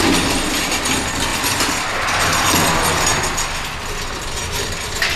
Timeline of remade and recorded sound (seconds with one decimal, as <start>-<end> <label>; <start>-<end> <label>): 0.0-5.2 recorded